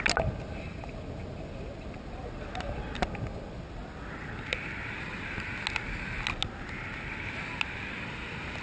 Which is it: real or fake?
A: real